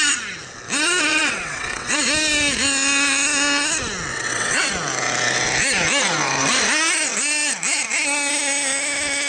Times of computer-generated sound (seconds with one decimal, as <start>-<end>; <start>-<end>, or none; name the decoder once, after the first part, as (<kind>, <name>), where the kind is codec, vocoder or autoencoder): 1.1-2.0 (vocoder, WaveNeXt); 4.1-4.7